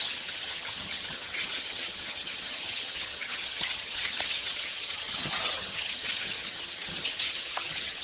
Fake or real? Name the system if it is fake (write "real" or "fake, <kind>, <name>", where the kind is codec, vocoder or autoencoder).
fake, vocoder, HiFi-GAN